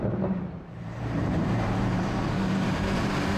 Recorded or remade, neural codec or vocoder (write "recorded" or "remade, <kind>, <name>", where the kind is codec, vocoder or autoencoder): remade, vocoder, BigVGAN v2